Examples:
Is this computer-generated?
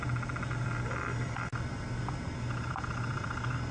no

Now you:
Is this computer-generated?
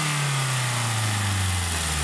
no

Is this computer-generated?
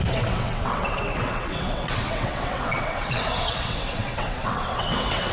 yes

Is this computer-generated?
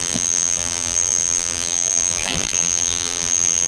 yes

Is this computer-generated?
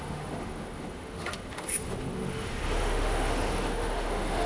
yes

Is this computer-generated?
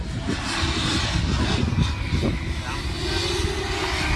no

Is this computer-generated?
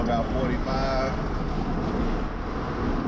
no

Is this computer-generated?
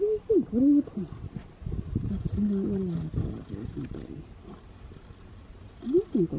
no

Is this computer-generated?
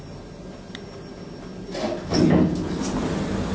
no